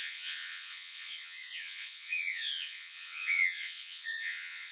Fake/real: fake